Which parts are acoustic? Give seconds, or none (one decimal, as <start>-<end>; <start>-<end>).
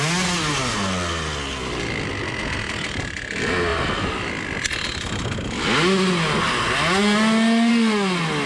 0.0-8.5